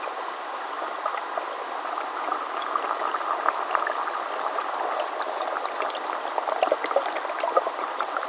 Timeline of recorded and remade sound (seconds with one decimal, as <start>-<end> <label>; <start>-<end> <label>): 0.0-8.3 recorded